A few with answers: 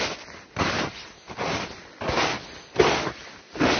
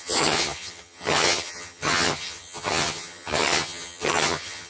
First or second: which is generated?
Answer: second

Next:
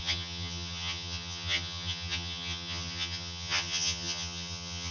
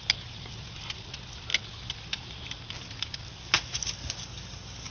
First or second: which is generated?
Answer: first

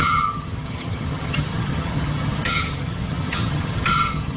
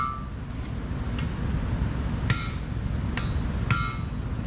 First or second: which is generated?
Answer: first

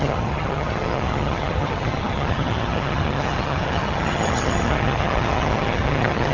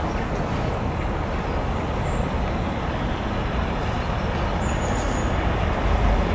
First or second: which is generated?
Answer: first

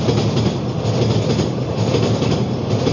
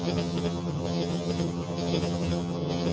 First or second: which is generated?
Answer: second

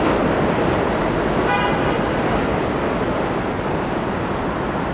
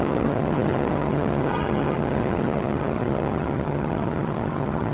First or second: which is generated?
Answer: second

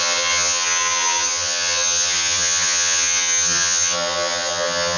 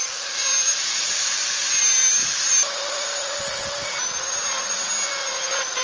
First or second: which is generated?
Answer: first